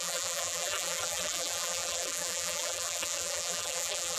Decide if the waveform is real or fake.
fake